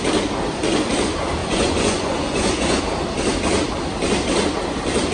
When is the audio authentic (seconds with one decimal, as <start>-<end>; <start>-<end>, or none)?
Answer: 0.0-1.4; 2.8-5.1